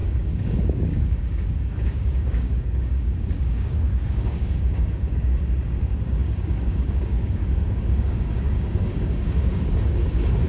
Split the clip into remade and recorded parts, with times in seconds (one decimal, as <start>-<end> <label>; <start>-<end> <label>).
0.0-10.5 remade